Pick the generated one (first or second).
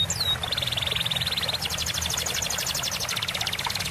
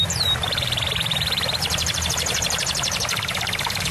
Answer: second